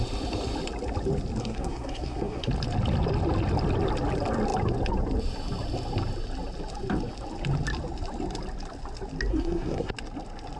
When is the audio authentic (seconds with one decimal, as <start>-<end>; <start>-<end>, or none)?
0.0-1.4; 2.5-9.3; 9.9-10.6